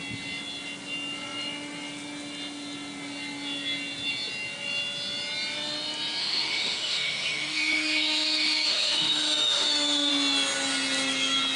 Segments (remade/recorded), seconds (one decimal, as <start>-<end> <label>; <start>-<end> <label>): 0.0-6.2 recorded; 6.2-10.1 remade; 10.1-11.6 recorded